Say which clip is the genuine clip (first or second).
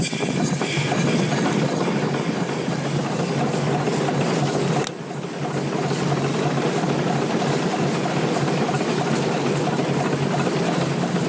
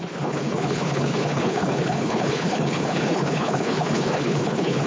first